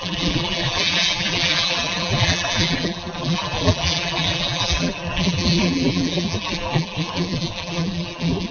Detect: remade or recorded remade